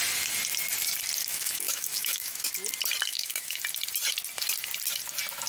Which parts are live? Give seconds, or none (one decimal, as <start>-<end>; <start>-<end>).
0.0-1.2; 2.5-3.1; 3.6-5.5